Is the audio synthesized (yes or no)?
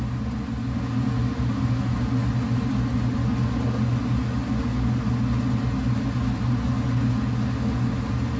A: no